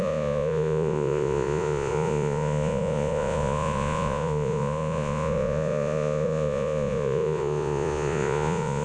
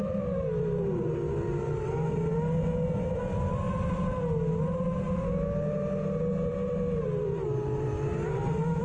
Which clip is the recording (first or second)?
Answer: second